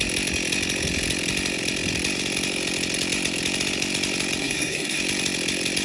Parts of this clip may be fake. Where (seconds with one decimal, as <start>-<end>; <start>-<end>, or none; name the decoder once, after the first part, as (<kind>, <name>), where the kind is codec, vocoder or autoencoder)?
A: 4.4-5.0 (codec, SNAC)